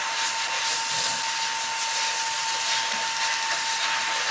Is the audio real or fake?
real